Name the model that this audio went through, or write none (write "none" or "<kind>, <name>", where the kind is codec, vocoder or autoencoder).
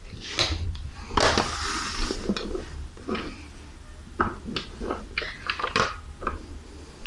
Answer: none